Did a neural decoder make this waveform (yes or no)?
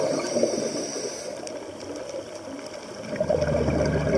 no